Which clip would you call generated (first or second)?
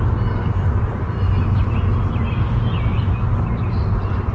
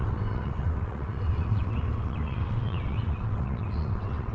second